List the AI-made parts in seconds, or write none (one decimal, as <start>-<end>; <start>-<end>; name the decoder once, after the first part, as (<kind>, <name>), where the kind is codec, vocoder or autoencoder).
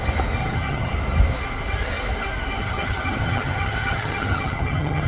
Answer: 0.4-0.9 (vocoder, HiFi-GAN); 2.6-5.1